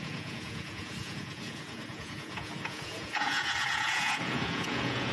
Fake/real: fake